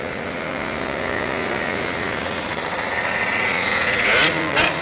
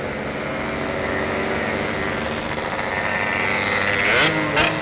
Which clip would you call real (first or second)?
second